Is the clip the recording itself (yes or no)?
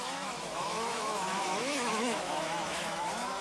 no